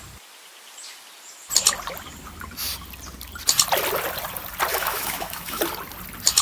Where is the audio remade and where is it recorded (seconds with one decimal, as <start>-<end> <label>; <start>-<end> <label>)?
0.0-4.7 recorded; 4.7-5.6 remade; 5.6-6.4 recorded